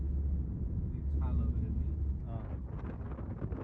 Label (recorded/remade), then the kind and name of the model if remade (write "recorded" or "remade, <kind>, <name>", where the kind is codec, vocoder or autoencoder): recorded